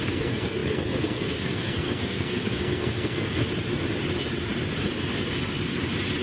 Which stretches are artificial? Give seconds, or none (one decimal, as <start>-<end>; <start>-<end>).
0.0-3.4